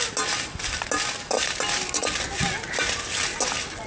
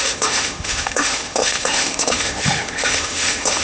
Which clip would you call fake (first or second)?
second